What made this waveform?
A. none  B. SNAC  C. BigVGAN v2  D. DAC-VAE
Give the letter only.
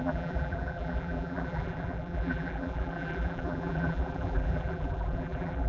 C